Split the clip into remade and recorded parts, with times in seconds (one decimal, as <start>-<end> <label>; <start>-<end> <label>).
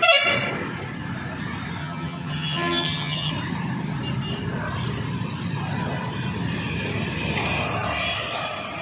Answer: 0.0-1.8 recorded; 1.8-3.3 remade; 3.3-8.8 recorded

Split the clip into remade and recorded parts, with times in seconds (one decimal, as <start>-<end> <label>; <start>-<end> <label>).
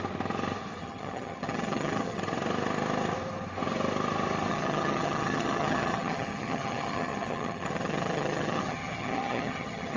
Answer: 0.0-0.8 recorded; 0.8-2.2 remade; 2.2-4.5 recorded; 4.5-10.0 remade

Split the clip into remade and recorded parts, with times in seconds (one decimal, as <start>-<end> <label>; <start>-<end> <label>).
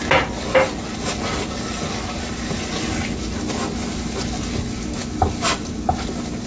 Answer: 0.0-6.5 recorded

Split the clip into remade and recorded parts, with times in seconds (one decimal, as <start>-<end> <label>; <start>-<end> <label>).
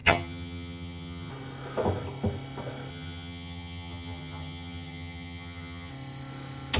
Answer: 0.0-1.3 remade; 1.3-2.9 recorded; 2.9-5.9 remade; 5.9-6.8 recorded